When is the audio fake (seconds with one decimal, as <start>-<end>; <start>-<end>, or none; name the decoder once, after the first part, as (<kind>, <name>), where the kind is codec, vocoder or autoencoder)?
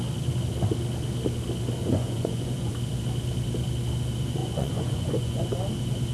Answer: 1.8-2.7 (vocoder, Vocos); 4.4-5.4